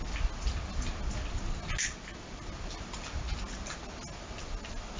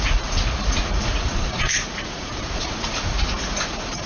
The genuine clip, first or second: first